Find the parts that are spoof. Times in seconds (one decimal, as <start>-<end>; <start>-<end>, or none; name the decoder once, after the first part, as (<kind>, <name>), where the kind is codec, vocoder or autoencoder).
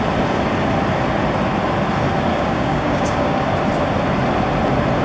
2.3-3.4 (codec, DAC)